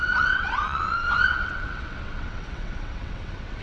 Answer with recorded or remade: remade